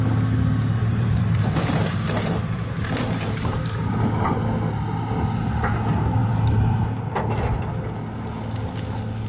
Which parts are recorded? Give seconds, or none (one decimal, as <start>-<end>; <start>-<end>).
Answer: 0.0-0.8; 4.4-6.2; 6.8-9.3